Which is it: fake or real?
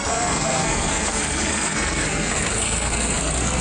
fake